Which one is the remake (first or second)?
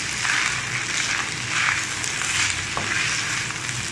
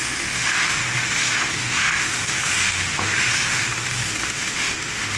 second